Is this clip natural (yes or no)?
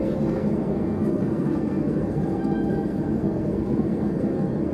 no